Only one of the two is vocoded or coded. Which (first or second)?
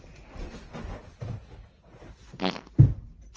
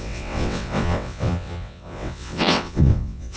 second